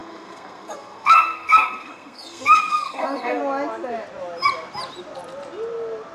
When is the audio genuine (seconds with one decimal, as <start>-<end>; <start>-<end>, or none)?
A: 3.4-6.1